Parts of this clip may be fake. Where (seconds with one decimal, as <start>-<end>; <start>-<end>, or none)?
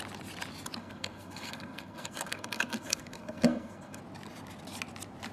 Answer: 0.8-4.0